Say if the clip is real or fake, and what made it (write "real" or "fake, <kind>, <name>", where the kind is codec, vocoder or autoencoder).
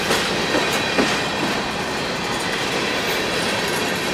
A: real